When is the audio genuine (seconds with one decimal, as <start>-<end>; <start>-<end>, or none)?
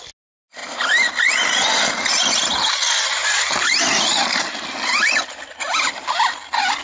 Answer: 0.0-0.6; 2.1-6.8